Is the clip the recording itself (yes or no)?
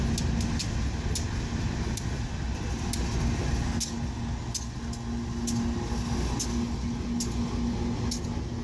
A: yes